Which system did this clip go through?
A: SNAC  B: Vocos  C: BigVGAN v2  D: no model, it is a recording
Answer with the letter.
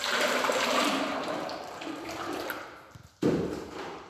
C